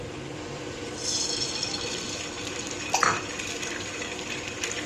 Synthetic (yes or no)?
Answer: yes